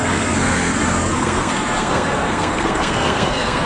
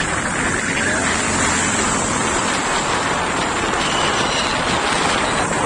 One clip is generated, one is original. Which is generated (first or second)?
first